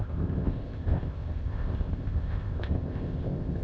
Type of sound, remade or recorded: remade